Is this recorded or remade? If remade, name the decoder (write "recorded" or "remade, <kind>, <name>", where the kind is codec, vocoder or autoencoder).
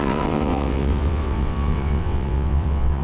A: remade, vocoder, WaveNeXt